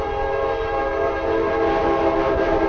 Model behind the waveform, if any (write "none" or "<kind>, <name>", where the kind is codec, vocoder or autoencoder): vocoder, BigVGAN v2